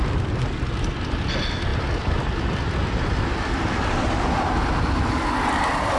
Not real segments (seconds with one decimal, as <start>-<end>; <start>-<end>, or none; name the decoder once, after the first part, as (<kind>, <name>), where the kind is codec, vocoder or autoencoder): none